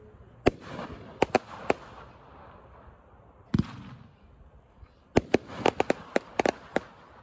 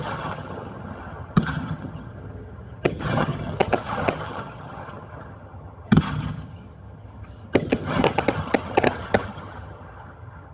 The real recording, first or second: first